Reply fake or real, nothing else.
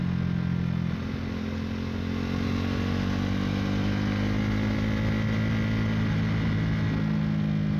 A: real